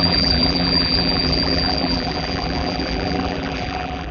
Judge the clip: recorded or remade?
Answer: remade